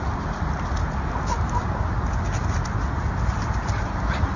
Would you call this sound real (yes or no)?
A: yes